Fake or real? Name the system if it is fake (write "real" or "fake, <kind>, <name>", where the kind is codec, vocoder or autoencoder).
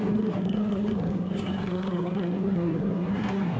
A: fake, codec, SNAC